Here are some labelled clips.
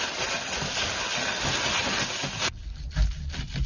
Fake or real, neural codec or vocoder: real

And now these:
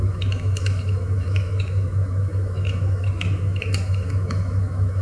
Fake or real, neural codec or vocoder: fake, autoencoder, DAC-VAE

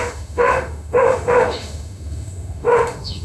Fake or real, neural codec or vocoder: fake, autoencoder, DAC-VAE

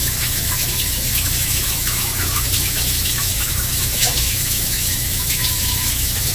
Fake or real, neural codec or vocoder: fake, autoencoder, DAC-VAE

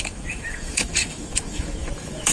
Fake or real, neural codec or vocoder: fake, autoencoder, DAC-VAE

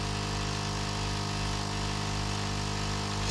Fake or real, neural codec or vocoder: real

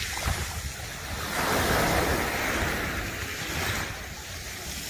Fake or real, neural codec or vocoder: real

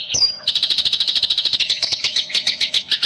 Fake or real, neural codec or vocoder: fake, autoencoder, DAC-VAE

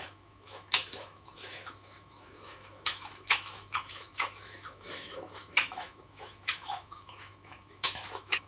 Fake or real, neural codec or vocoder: fake, autoencoder, DAC-VAE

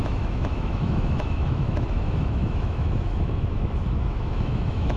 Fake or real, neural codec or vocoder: fake, autoencoder, DAC-VAE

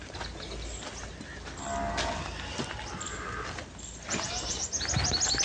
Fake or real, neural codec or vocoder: real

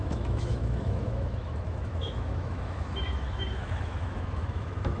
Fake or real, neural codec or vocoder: fake, autoencoder, DAC-VAE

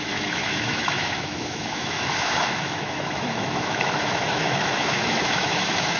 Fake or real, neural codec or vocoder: fake, autoencoder, DAC-VAE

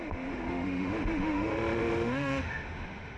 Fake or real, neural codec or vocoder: fake, autoencoder, DAC-VAE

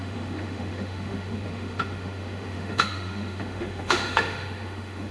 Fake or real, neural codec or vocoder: fake, autoencoder, DAC-VAE